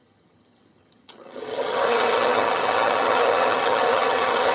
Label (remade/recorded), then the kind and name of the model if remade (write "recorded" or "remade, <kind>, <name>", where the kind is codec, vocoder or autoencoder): remade, vocoder, HiFi-GAN